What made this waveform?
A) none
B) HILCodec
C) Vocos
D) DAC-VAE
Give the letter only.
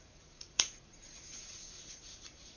C